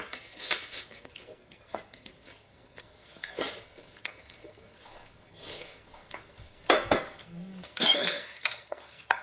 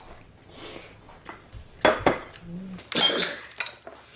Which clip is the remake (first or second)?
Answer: first